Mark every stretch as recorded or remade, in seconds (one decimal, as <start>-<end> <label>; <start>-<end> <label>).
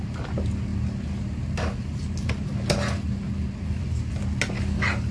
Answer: 0.0-5.1 recorded